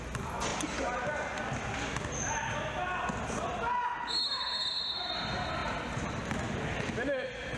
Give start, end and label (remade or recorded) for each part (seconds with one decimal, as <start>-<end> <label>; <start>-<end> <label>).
0.0-0.5 recorded; 0.5-1.4 remade; 1.4-5.6 recorded; 5.6-6.2 remade; 6.2-7.6 recorded

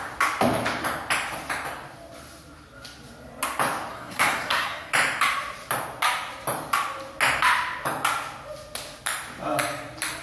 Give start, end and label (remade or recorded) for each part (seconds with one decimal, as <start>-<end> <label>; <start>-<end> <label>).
0.0-3.9 recorded; 3.9-4.9 remade; 4.9-10.2 recorded

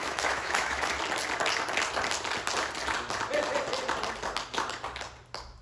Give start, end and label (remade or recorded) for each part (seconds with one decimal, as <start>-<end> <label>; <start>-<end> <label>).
0.0-0.9 remade; 0.9-5.6 recorded

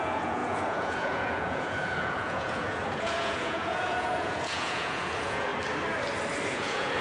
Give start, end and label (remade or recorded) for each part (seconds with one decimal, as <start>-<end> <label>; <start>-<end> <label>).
0.0-5.5 remade; 5.5-6.5 recorded; 6.5-7.0 remade

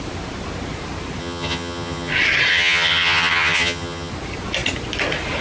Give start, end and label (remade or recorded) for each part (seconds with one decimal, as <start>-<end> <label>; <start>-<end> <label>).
0.0-1.2 recorded; 1.2-2.1 remade; 2.1-2.5 recorded; 2.5-4.1 remade; 4.1-5.4 recorded

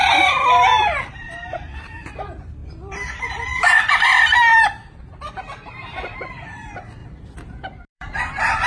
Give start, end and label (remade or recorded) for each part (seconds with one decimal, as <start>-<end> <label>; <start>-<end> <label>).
0.0-2.6 recorded; 2.6-5.3 remade; 5.3-7.0 recorded; 7.0-8.7 remade

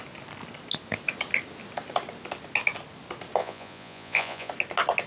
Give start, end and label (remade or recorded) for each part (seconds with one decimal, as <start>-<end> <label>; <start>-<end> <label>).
0.0-3.4 recorded; 3.4-4.5 remade; 4.5-5.1 recorded